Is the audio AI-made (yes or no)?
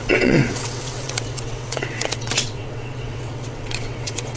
yes